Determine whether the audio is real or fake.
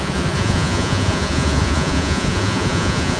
fake